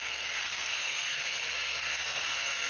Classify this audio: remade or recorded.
remade